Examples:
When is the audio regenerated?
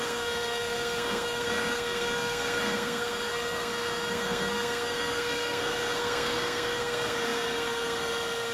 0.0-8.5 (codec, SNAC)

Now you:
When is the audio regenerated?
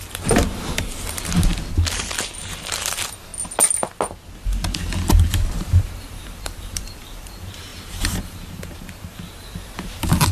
0.0-1.5 (vocoder, BigVGAN v2); 2.4-3.3; 5.5-10.3